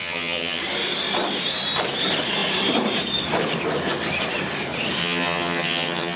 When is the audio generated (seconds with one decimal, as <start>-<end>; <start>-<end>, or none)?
0.0-0.6; 5.0-6.2